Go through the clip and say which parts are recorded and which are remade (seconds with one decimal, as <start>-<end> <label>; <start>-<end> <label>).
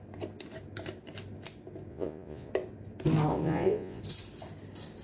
0.0-1.9 recorded; 1.9-2.5 remade; 2.5-3.3 recorded; 3.3-4.0 remade; 4.0-5.0 recorded